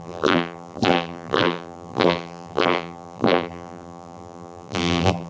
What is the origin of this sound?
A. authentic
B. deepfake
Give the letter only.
B